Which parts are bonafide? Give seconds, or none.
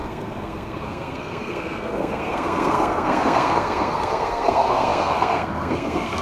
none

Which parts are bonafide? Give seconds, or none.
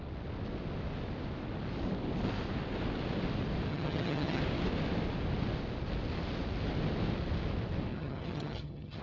0.0-3.7; 4.4-7.9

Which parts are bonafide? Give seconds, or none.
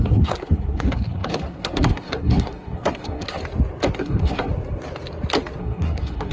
3.4-4.0; 4.5-5.6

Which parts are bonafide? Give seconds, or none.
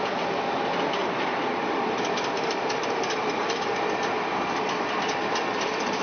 0.0-1.0; 4.6-6.0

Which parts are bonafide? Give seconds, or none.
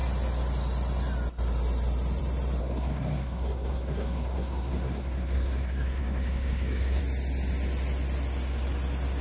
0.0-2.6; 7.0-9.2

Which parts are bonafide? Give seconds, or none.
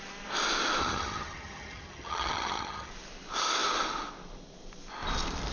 0.0-0.8; 2.9-5.5